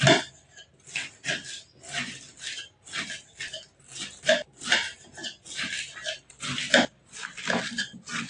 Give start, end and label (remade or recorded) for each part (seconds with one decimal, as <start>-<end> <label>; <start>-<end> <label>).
0.0-8.3 recorded